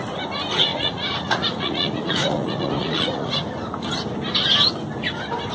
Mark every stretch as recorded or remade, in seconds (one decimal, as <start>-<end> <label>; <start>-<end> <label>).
0.0-0.7 recorded; 0.7-3.3 remade; 3.3-5.5 recorded